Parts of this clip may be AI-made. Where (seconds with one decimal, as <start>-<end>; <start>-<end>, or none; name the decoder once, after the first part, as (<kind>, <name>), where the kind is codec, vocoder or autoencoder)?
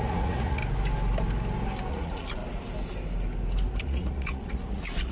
0.0-0.6 (vocoder, Vocos); 1.9-2.4; 3.8-5.1